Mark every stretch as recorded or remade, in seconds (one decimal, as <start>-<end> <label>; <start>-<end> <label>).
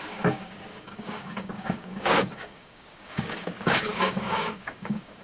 0.0-5.2 remade